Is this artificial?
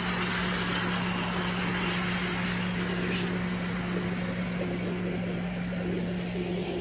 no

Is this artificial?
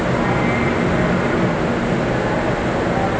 no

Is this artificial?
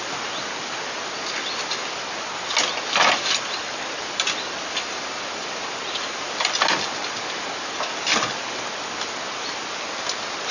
no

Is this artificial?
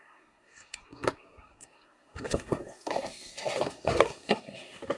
yes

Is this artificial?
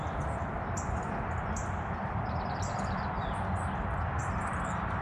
no